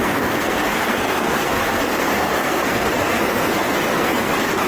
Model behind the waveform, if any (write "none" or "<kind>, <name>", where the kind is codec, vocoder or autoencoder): codec, SNAC